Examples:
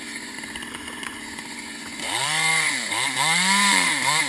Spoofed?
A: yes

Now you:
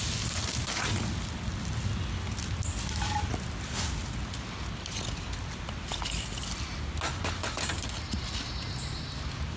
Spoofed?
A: no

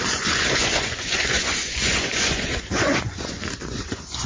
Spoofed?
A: yes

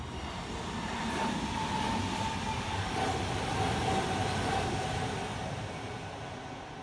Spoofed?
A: no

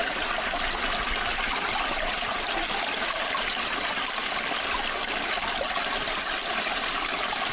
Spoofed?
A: no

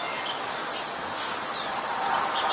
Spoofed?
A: no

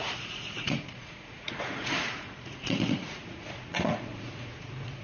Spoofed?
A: yes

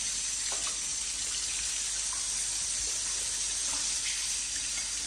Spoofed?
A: no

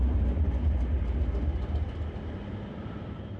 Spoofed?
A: no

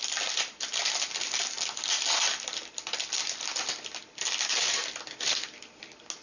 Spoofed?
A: no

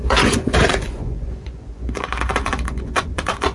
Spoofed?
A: yes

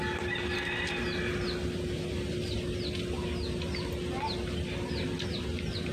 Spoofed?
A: no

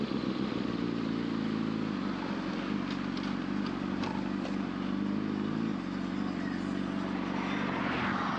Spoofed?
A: no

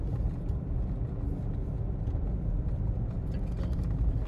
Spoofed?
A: no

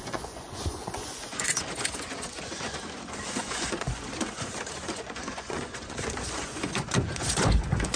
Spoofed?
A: yes